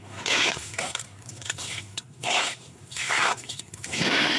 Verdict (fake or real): fake